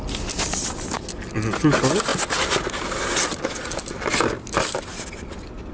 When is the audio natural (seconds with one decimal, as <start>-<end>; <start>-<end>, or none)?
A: 0.0-5.7